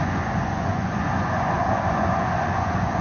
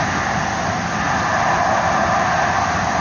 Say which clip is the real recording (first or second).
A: second